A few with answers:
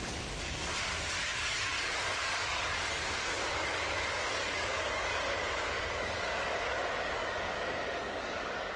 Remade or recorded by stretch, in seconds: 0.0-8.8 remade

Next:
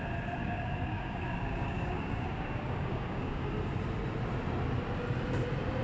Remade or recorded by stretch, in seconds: 0.0-0.4 recorded; 0.4-3.5 remade; 3.5-5.8 recorded

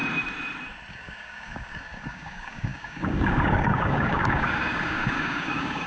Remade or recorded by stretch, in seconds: 0.0-0.9 recorded; 0.9-5.9 remade

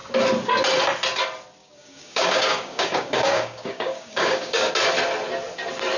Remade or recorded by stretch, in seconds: 0.0-1.6 recorded; 1.6-4.7 remade; 4.7-6.0 recorded